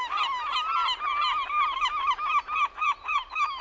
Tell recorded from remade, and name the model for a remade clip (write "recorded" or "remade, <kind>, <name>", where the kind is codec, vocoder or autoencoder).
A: recorded